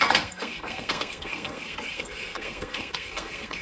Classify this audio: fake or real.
fake